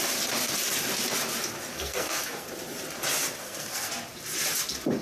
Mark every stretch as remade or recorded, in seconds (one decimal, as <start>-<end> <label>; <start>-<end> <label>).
0.0-1.7 recorded; 1.7-2.5 remade; 2.5-3.4 recorded; 3.4-3.9 remade; 3.9-5.0 recorded